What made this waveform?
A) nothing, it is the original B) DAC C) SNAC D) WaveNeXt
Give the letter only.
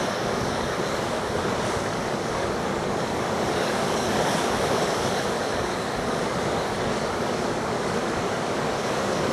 B